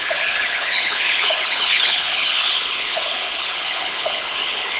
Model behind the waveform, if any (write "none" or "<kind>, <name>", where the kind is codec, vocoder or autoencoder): codec, HILCodec